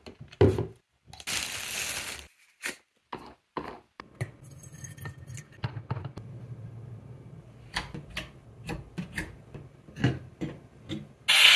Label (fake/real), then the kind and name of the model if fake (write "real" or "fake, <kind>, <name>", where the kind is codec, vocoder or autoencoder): real